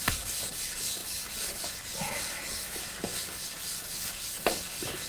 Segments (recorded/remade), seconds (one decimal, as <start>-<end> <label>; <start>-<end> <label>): 0.0-5.1 remade